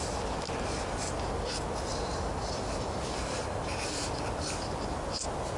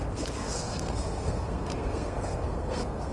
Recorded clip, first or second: first